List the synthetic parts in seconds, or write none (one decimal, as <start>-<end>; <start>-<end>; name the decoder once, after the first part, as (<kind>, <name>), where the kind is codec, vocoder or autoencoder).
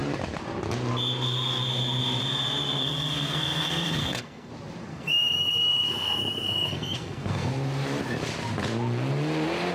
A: 2.8-4.5 (codec, SNAC); 4.9-7.5